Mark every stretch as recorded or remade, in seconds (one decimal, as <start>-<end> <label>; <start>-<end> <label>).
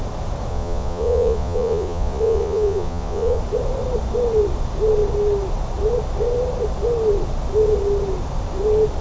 0.0-0.5 recorded; 0.5-3.4 remade; 3.4-9.0 recorded